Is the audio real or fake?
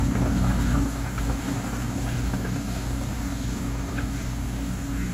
fake